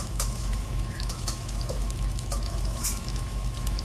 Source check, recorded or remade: remade